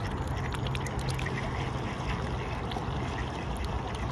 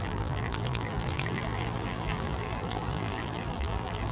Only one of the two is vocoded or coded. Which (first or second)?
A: second